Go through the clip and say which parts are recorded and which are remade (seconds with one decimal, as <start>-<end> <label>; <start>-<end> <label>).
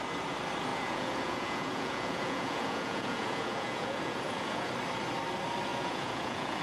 0.0-0.7 recorded; 0.7-4.7 remade; 4.7-5.7 recorded; 5.7-6.6 remade